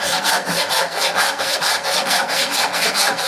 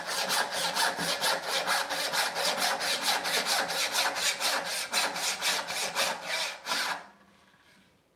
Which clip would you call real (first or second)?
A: second